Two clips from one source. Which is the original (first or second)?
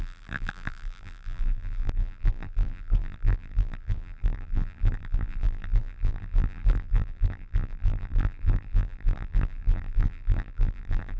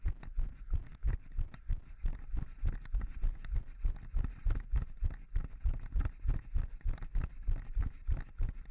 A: second